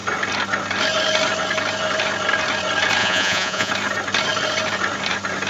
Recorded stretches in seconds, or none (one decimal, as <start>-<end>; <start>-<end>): 0.0-3.0; 3.7-5.5